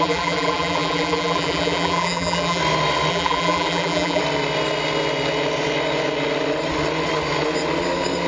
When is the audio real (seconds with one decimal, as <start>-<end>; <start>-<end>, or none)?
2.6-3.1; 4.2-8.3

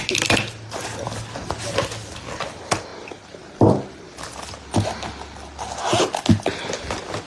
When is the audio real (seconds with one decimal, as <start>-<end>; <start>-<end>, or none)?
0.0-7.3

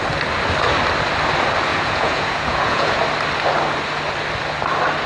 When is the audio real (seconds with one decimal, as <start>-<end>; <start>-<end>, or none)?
0.0-1.7; 3.0-5.1

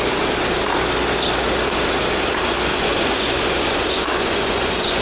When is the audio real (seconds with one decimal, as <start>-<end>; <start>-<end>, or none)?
0.0-2.7

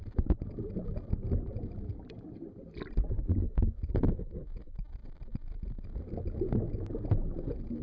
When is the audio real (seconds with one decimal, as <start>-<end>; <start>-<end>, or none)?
0.0-7.8

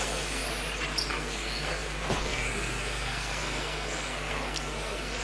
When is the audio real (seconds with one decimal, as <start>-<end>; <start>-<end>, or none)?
0.4-1.1